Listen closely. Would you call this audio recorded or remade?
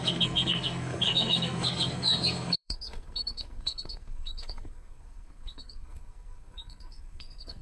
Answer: remade